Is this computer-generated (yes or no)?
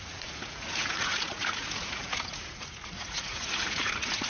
yes